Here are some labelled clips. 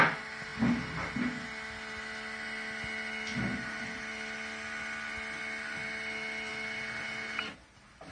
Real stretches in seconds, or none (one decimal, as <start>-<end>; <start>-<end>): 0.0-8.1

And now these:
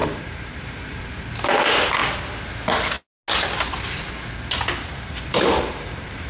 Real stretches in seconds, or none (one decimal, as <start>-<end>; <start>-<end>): 1.0-4.9

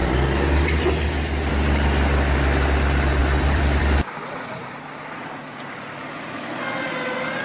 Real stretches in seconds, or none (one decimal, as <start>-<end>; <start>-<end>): 0.0-3.2; 4.7-7.4

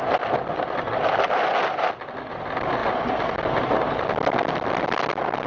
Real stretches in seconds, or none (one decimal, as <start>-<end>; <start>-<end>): 0.0-5.5

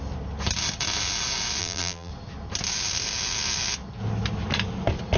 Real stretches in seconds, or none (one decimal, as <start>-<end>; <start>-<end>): 0.0-1.6; 2.1-5.2

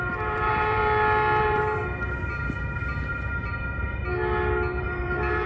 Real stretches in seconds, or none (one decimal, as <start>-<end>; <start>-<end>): 0.8-1.4; 1.8-4.8